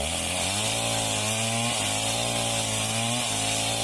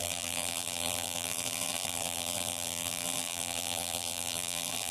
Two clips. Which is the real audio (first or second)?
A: first